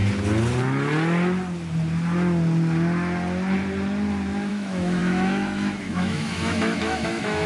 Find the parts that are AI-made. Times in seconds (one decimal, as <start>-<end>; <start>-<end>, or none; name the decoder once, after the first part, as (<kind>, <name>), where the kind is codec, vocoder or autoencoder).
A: 4.5-7.5 (autoencoder, DAC-VAE)